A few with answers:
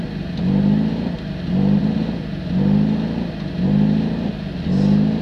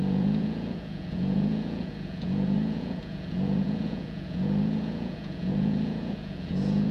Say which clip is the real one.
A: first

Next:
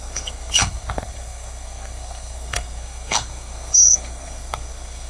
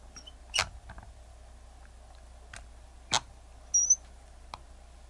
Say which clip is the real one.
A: second